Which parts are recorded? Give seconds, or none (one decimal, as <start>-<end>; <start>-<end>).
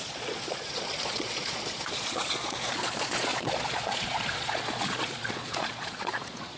none